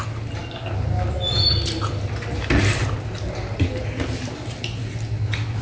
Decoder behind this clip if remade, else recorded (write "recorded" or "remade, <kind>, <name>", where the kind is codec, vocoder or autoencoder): recorded